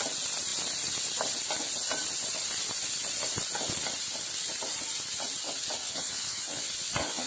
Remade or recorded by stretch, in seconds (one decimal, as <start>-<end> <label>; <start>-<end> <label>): 0.0-5.8 recorded; 5.8-7.3 remade